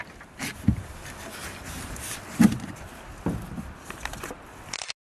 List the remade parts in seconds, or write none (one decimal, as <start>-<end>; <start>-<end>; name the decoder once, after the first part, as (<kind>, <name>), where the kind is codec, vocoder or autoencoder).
none